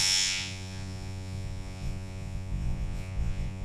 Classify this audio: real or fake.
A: fake